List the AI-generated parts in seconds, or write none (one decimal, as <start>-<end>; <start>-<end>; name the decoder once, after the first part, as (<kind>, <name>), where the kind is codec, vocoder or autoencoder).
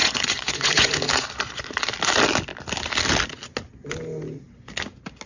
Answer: 0.0-0.9 (vocoder, Vocos)